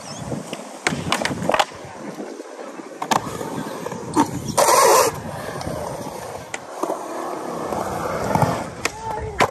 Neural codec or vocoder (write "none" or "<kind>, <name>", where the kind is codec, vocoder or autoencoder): none